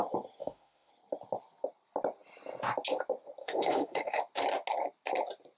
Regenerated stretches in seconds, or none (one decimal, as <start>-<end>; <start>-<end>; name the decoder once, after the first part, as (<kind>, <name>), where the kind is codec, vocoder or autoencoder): 0.4-0.9 (autoencoder, DAC-VAE); 3.4-4.2